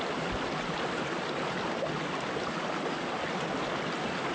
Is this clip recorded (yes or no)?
yes